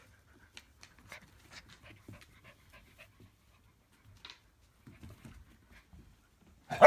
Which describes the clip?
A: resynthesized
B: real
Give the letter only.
B